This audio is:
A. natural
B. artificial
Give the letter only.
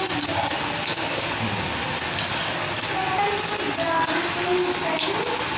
A